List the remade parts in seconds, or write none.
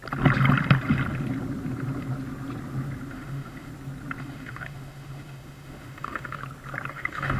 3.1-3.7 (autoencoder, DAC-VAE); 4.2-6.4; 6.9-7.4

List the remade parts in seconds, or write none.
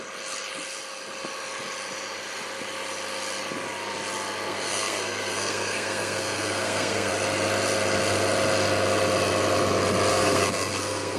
4.5-7.1 (codec, SNAC); 10.1-11.2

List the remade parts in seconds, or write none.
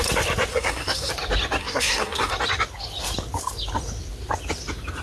0.5-1.1 (codec, SNAC); 1.6-2.3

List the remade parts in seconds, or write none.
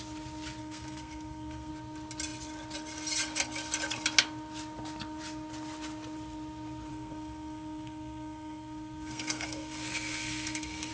0.6-1.7 (codec, SNAC); 6.9-10.9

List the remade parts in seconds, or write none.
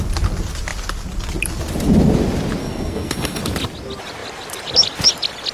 2.6-3.4 (codec, SNAC)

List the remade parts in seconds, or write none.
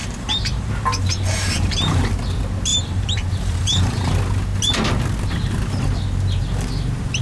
0.0-2.0 (vocoder, BigVGAN v2); 2.7-4.1